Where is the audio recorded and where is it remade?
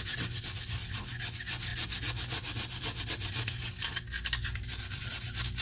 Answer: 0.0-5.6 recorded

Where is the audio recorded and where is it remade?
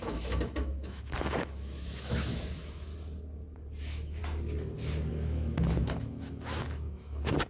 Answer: 0.0-2.9 remade; 2.9-3.8 recorded; 3.8-4.2 remade; 4.2-5.1 recorded; 5.1-7.5 remade